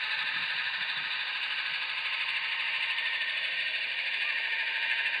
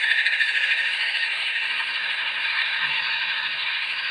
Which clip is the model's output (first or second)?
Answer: second